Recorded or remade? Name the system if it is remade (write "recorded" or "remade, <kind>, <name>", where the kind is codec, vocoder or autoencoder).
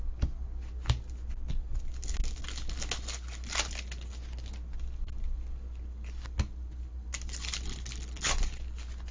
recorded